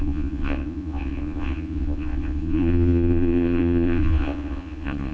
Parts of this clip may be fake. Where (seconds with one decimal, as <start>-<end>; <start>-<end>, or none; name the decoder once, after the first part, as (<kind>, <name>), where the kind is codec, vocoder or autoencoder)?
0.0-5.1 (vocoder, Vocos)

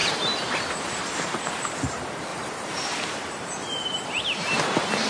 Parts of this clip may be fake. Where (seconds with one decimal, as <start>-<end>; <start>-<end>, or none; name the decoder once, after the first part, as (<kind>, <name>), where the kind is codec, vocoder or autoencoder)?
2.3-4.6 (vocoder, BigVGAN v2)

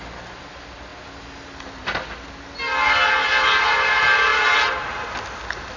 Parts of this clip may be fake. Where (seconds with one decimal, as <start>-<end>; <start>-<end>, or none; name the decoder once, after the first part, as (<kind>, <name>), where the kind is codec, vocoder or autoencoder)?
none

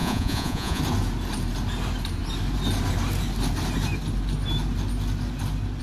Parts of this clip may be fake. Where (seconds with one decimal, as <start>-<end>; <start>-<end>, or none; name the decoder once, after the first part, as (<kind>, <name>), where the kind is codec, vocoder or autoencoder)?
0.0-0.8 (vocoder, Vocos)

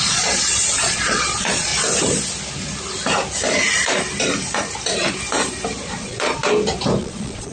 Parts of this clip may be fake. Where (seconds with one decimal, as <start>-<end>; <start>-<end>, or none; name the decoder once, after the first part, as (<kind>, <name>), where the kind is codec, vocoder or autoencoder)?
0.0-1.7 (vocoder, Vocos); 5.9-6.4; 7.0-7.5

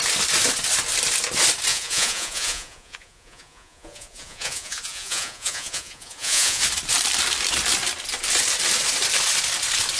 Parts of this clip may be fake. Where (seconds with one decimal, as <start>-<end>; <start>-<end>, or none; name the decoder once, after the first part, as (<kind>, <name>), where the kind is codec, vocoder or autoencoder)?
1.7-6.6 (vocoder, Vocos)